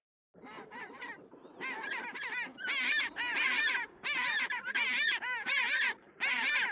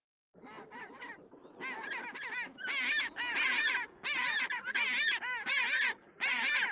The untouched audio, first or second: second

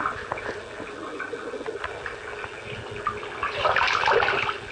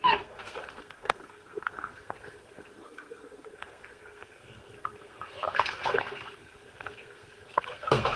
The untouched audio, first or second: first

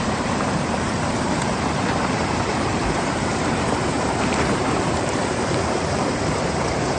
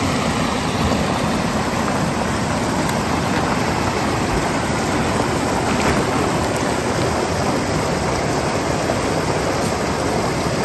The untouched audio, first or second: second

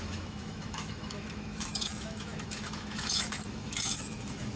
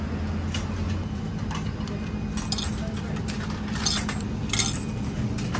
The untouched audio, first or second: second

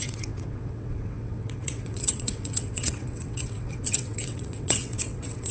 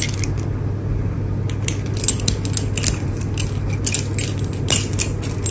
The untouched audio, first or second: second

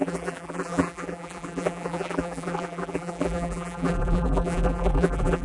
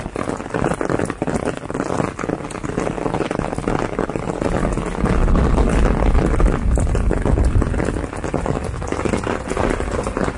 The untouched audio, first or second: second